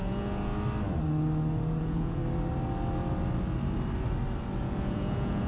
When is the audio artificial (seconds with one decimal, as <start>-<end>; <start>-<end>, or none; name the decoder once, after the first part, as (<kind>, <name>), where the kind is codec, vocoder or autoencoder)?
0.0-0.5 (vocoder, Vocos); 1.8-2.2; 4.6-5.5